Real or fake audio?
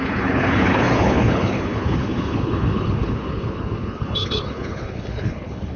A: fake